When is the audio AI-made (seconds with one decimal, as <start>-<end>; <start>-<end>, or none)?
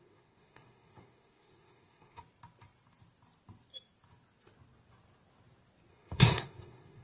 0.0-2.2; 5.9-7.0